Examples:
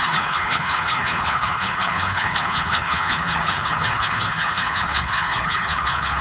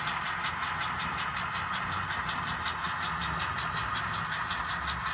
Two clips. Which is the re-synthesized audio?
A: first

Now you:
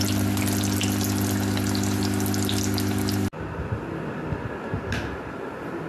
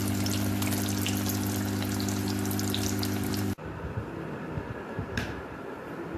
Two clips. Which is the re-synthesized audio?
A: second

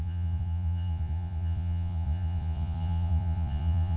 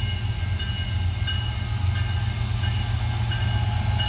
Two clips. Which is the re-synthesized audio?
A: first